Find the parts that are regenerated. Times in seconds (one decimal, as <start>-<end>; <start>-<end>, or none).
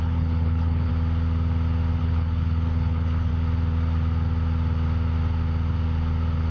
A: 0.0-0.9; 2.0-3.3